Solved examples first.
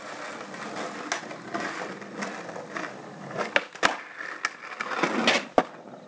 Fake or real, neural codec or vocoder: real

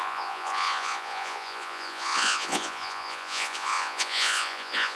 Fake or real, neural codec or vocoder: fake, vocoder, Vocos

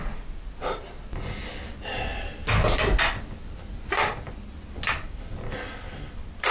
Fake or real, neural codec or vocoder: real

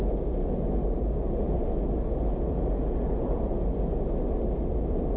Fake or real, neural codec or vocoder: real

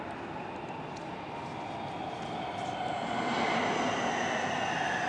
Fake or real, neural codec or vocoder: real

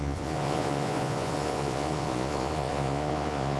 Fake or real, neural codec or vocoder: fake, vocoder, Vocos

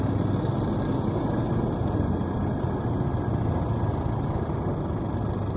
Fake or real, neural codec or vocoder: real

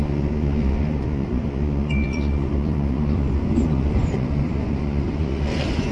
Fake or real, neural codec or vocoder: fake, vocoder, Vocos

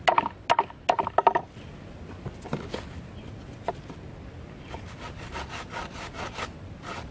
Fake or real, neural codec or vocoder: real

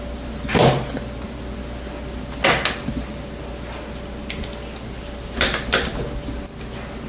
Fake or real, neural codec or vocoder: real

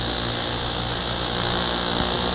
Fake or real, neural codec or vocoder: real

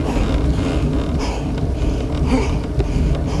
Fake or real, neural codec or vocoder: real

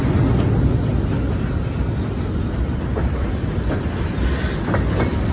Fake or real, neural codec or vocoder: real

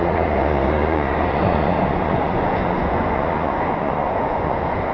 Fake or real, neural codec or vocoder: fake, vocoder, Vocos